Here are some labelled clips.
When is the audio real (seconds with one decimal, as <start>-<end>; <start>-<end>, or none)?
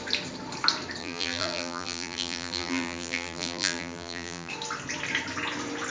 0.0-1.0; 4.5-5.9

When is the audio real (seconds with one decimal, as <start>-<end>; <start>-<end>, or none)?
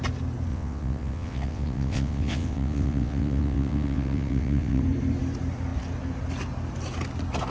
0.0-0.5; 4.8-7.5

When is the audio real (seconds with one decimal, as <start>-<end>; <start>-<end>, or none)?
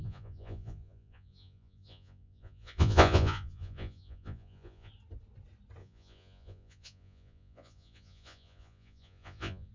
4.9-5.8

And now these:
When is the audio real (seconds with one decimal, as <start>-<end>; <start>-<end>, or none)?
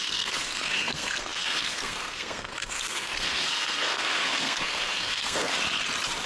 5.5-6.3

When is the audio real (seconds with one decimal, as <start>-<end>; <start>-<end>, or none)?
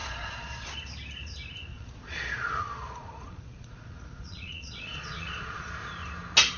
0.7-1.7; 5.7-6.6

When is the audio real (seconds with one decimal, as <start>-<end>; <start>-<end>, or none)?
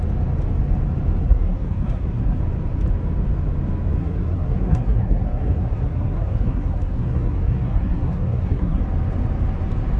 0.0-1.2; 2.4-4.0; 8.8-10.0